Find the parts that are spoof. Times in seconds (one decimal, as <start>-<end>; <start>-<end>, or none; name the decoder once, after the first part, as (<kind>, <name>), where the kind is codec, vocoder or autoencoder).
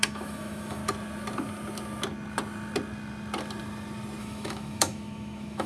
0.0-0.8 (autoencoder, DAC-VAE); 4.2-5.7